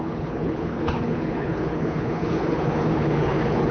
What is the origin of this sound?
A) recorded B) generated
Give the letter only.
B